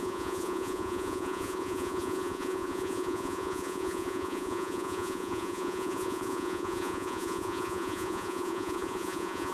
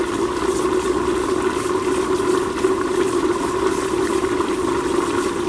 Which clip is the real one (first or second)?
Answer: second